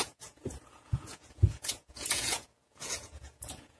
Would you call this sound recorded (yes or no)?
no